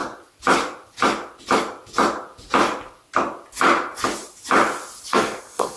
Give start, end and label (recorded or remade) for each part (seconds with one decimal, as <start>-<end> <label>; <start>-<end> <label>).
0.0-5.1 recorded; 5.1-5.8 remade